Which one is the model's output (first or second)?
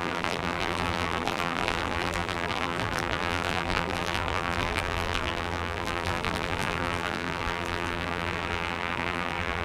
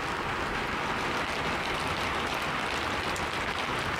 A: first